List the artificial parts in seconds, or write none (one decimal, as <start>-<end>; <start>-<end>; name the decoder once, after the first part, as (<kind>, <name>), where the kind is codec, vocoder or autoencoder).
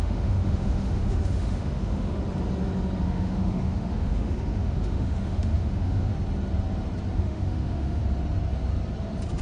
0.0-2.2 (autoencoder, DAC-VAE); 3.0-6.1; 7.2-8.0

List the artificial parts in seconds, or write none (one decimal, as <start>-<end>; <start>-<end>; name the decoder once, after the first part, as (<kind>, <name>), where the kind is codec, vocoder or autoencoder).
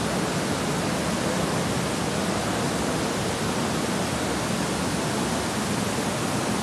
none